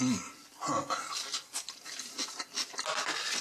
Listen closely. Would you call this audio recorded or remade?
recorded